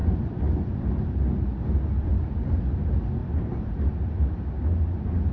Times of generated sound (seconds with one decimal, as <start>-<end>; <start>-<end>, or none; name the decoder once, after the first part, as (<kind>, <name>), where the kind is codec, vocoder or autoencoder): 0.0-0.9 (vocoder, BigVGAN v2); 3.2-3.9